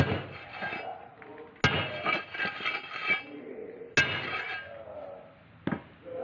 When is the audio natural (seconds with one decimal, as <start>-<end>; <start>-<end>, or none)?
0.0-6.2